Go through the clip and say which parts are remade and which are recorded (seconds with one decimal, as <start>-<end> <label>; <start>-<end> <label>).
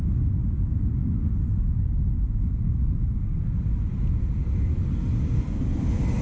0.0-6.2 recorded